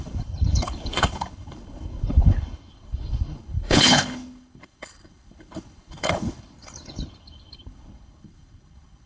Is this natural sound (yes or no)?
no